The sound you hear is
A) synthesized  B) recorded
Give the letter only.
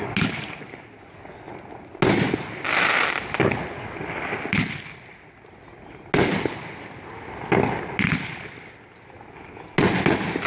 B